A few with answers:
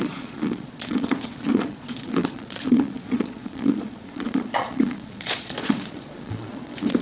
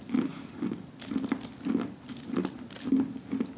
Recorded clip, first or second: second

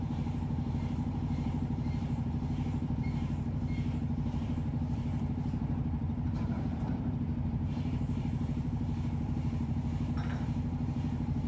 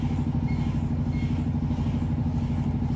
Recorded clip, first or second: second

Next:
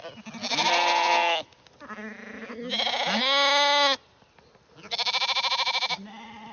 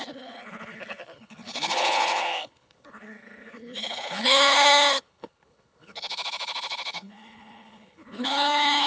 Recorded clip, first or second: first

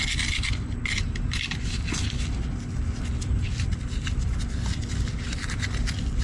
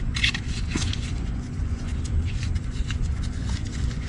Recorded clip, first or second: first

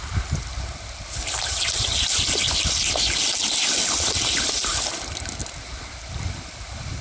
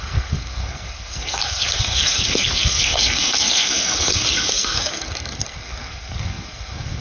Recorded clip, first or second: first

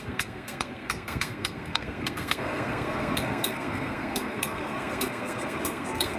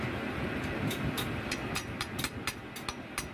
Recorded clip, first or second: second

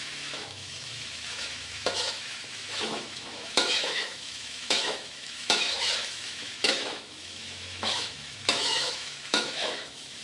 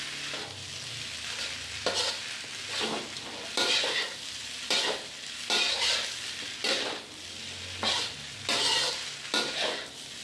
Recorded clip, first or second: second